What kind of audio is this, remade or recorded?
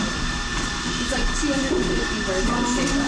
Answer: recorded